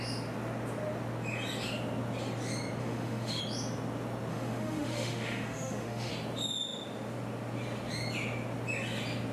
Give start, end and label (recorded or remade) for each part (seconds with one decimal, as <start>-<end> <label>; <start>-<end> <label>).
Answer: 0.0-2.8 recorded; 2.8-3.4 remade; 3.4-4.3 recorded; 4.3-6.1 remade; 6.1-9.3 recorded